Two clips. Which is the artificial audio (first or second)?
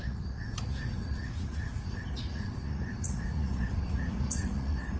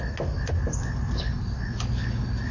first